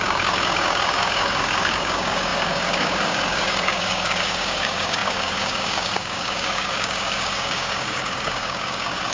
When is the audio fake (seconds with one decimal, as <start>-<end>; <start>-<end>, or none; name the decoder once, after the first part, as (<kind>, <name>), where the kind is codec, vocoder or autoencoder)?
0.0-9.1 (codec, DAC)